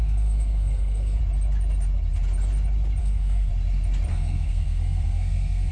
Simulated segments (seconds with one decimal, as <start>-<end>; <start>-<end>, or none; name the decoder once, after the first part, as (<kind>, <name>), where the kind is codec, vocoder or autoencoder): 0.0-1.2 (codec, SNAC); 3.0-3.5; 4.1-5.7